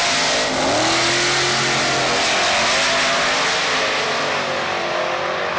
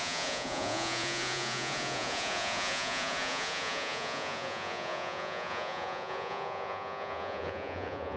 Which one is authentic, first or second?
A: first